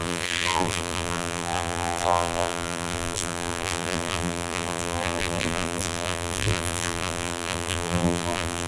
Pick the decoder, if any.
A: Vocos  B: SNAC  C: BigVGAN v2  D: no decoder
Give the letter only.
C